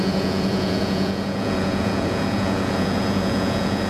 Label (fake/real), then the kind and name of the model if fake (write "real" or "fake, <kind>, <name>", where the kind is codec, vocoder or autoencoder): fake, vocoder, Vocos